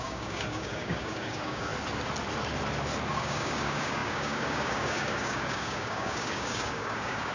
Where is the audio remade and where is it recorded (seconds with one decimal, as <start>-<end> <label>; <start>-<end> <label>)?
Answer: 0.0-1.7 remade; 1.7-3.1 recorded; 3.1-7.3 remade